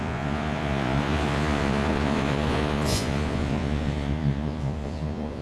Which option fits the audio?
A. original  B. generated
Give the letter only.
B